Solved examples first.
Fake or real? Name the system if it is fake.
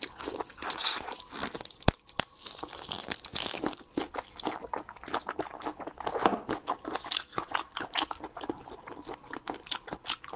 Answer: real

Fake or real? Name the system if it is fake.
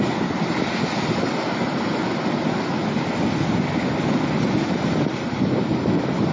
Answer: real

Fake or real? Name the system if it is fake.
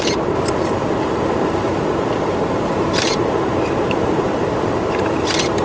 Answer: fake, vocoder, BigVGAN v2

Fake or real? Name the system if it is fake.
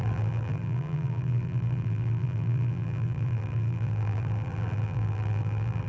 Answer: fake, vocoder, BigVGAN v2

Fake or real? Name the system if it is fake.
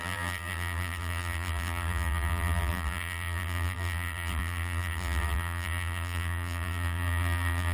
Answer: fake, vocoder, BigVGAN v2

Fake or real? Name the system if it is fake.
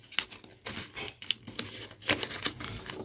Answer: real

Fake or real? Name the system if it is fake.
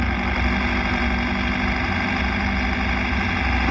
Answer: real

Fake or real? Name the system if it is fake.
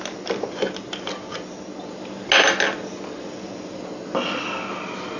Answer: real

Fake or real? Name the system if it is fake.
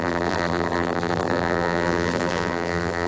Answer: fake, vocoder, BigVGAN v2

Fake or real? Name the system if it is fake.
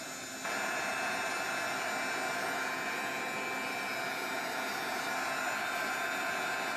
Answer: real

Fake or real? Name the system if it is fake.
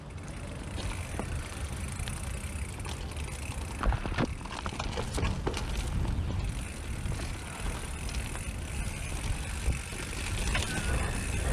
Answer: real